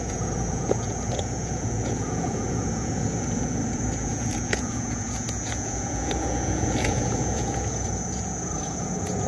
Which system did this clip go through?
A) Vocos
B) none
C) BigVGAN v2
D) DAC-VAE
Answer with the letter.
A